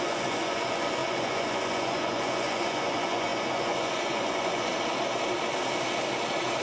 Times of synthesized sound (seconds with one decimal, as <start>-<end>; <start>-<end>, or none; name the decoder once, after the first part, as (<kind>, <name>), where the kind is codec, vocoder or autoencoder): 0.0-4.7 (vocoder, Vocos)